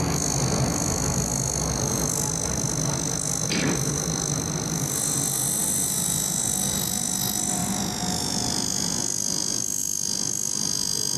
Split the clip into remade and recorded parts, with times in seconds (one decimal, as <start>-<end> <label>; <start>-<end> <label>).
0.0-11.2 recorded